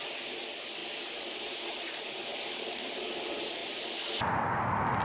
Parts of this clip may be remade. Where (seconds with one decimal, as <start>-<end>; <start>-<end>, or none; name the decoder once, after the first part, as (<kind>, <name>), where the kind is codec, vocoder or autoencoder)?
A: 2.3-2.9 (vocoder, BigVGAN v2); 3.6-4.6

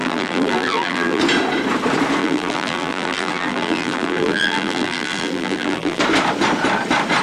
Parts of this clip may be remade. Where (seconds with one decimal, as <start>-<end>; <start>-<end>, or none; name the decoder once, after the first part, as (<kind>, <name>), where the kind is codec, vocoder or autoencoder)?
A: 0.0-1.2 (vocoder, BigVGAN v2); 2.2-6.0

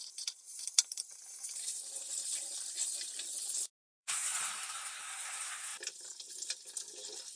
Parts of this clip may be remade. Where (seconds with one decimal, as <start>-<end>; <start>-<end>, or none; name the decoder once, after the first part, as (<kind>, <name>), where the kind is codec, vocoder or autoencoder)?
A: 0.0-2.1 (vocoder, BigVGAN v2); 4.0-4.8

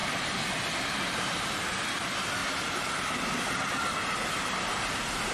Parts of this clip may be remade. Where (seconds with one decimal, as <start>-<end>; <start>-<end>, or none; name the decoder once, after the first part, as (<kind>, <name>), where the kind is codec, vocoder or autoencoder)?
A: 0.0-1.7 (vocoder, BigVGAN v2)

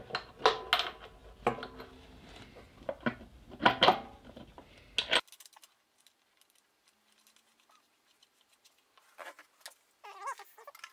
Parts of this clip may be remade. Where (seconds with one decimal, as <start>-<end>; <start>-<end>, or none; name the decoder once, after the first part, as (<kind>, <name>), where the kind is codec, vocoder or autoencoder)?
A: none

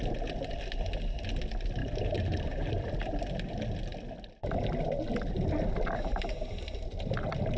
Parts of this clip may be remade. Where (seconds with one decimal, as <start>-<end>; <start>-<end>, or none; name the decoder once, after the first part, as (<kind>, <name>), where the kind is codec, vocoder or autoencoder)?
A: 1.8-2.9 (vocoder, BigVGAN v2)

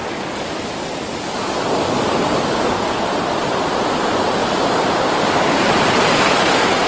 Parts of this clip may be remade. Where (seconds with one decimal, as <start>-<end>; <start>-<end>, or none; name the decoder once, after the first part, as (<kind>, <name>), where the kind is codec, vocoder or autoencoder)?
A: 0.0-6.9 (vocoder, BigVGAN v2)